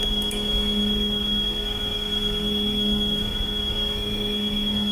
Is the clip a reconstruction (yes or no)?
yes